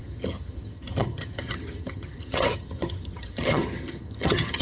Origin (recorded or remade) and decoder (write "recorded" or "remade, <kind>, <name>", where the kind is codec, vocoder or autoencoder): remade, vocoder, HiFi-GAN